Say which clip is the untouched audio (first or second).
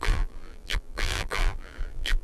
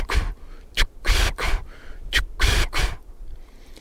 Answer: second